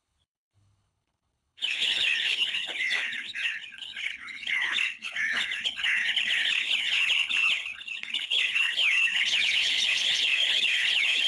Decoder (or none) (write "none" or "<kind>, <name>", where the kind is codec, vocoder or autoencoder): codec, HILCodec